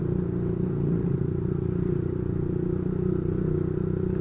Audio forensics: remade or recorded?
recorded